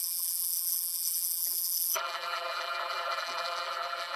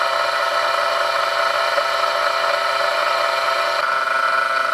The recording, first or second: second